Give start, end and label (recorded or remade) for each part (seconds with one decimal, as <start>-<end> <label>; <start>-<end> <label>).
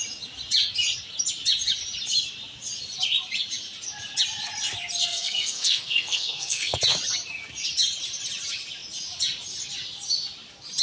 0.0-5.0 recorded; 5.0-6.8 remade; 6.8-10.8 recorded